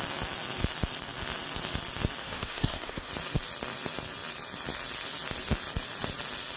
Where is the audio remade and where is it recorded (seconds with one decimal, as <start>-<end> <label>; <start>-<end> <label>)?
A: 0.0-2.2 recorded; 2.2-3.1 remade; 3.1-6.6 recorded